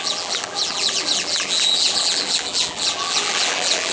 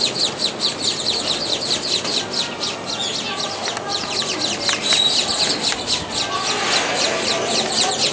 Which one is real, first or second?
second